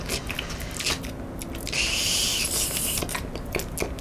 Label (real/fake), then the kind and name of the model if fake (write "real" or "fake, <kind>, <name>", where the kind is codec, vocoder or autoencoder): real